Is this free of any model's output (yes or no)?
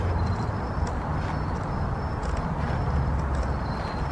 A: yes